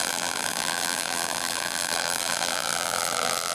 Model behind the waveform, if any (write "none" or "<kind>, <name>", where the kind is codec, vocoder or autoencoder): vocoder, BigVGAN v2